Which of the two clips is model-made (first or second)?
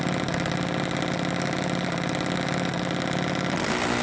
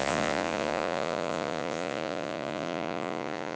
second